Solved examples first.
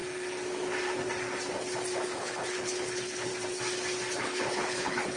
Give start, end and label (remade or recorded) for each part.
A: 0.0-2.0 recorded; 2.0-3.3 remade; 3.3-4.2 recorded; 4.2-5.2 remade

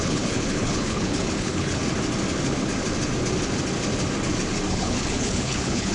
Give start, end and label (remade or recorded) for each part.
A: 0.0-1.8 remade; 1.8-4.7 recorded; 4.7-5.9 remade